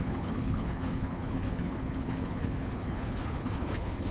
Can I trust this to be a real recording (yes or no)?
no